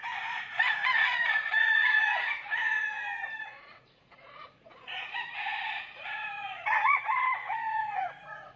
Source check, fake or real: fake